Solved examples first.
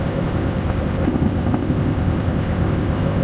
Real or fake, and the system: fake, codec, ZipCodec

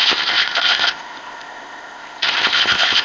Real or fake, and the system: fake, codec, ZipCodec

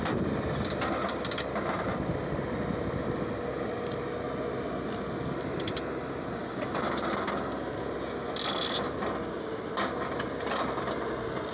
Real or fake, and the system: real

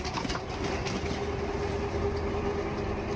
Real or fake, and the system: real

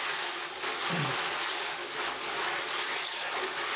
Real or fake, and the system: real